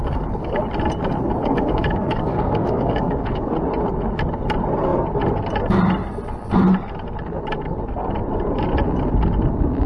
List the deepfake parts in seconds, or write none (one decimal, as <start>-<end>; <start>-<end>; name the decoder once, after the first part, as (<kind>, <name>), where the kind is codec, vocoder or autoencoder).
0.0-0.6 (codec, DAC); 1.4-3.5